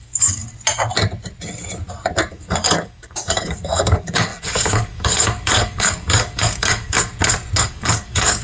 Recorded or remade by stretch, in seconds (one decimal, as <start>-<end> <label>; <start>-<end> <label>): 0.0-0.4 remade; 0.4-2.3 recorded; 2.3-7.1 remade; 7.1-7.6 recorded; 7.6-8.4 remade

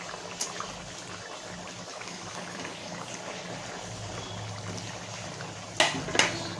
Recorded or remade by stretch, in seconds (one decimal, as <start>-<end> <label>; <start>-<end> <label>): 0.0-1.9 recorded; 1.9-3.1 remade; 3.1-6.6 recorded

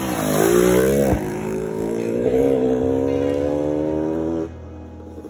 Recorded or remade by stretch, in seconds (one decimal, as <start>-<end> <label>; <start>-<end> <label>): 0.0-1.3 recorded; 1.3-2.8 remade; 2.8-5.3 recorded